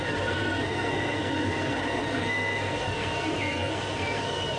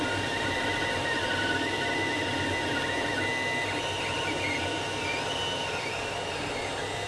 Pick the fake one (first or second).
first